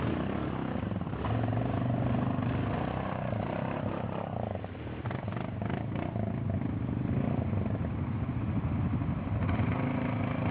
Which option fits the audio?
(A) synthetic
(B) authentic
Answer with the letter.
B